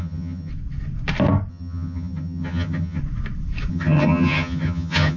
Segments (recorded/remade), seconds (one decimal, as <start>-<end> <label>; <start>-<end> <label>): 0.0-0.5 remade; 0.5-1.5 recorded; 1.5-3.0 remade; 3.0-3.7 recorded; 3.7-5.2 remade